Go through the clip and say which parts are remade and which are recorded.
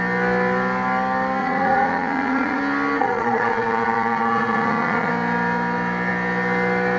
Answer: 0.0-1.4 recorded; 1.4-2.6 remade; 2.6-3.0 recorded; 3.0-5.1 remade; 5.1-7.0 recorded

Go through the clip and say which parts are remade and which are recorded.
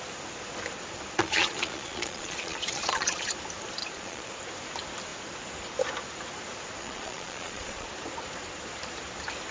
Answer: 0.0-1.2 recorded; 1.2-3.3 remade; 3.3-3.8 recorded; 3.8-4.4 remade; 4.4-6.8 recorded; 6.8-7.9 remade; 7.9-9.5 recorded